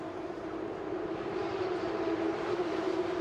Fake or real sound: fake